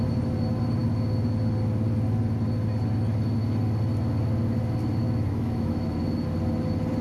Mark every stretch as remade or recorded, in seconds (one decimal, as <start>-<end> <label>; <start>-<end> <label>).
0.0-5.0 recorded; 5.0-6.0 remade; 6.0-7.0 recorded